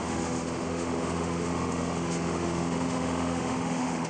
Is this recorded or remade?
remade